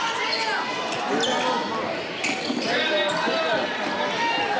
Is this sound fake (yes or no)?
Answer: no